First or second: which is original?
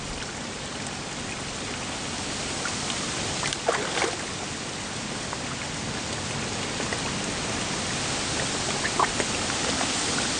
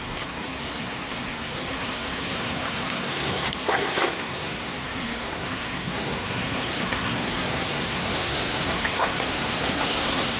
first